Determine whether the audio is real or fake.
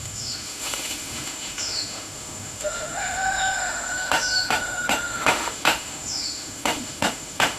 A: fake